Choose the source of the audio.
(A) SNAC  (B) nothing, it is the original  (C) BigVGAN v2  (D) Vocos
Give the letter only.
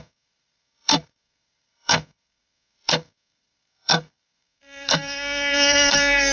A